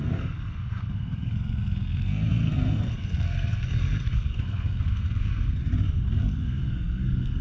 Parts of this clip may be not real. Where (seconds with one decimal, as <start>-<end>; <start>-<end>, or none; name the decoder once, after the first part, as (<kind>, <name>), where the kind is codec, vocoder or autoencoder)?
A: 0.0-5.6 (codec, SNAC); 6.2-7.4